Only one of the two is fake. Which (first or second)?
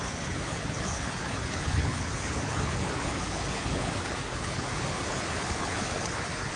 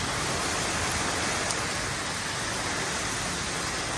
first